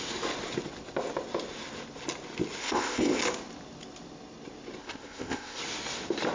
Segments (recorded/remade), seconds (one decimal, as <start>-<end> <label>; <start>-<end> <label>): 0.0-2.6 recorded; 2.6-3.2 remade; 3.2-4.8 recorded; 4.8-5.6 remade; 5.6-6.3 recorded